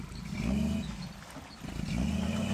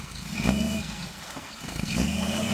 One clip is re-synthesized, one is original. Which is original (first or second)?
first